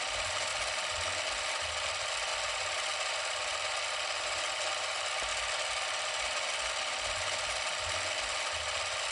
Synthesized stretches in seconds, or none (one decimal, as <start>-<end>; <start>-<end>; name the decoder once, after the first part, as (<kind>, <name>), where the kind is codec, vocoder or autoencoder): none

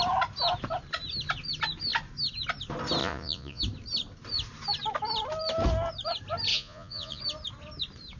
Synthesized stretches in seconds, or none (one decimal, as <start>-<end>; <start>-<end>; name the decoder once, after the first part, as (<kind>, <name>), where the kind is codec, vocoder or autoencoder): 3.0-3.6 (vocoder, Vocos); 6.5-7.2